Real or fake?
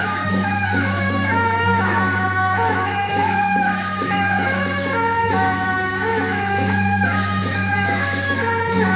fake